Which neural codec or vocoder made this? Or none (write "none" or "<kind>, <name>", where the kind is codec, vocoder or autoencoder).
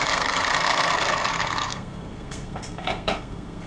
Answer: codec, SNAC